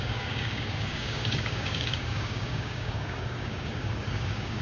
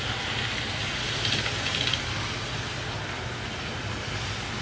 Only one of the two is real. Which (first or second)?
second